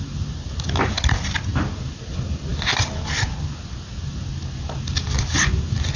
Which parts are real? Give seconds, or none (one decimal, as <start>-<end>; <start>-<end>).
0.0-6.0

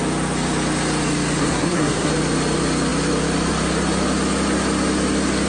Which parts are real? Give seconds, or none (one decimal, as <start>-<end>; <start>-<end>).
0.0-1.4; 2.1-5.5

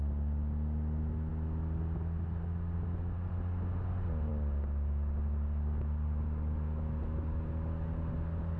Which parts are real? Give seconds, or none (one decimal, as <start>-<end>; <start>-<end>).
0.0-8.6

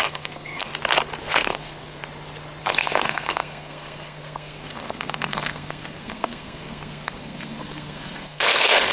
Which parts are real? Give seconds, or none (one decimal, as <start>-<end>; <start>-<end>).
0.7-1.2; 2.0-2.6

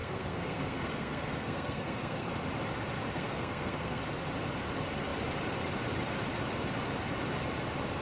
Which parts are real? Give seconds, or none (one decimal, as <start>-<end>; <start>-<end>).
2.3-3.1; 4.0-8.0

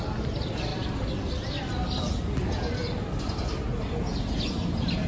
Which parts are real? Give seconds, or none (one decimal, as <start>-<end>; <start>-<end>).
0.0-5.1